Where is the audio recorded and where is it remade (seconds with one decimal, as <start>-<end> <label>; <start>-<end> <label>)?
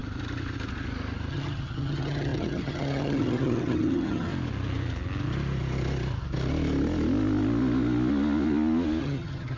0.0-1.3 recorded; 1.3-4.3 remade; 4.3-9.0 recorded; 9.0-9.6 remade